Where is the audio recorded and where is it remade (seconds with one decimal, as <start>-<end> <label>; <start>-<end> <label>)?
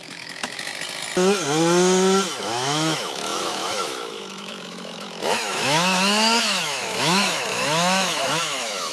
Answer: 0.0-0.7 remade; 0.7-2.4 recorded; 2.4-8.9 remade